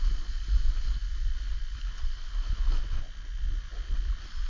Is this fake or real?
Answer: real